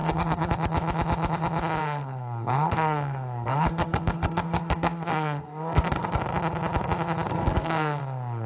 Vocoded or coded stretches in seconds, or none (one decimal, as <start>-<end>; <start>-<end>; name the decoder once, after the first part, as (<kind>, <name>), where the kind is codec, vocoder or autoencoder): 0.0-0.5 (codec, SNAC); 1.8-6.2; 7.3-8.0